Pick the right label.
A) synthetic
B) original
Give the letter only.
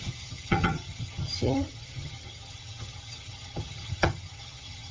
A